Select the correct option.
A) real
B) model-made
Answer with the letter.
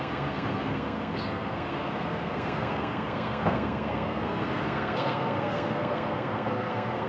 B